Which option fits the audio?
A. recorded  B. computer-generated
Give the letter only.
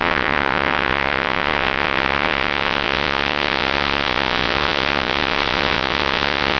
B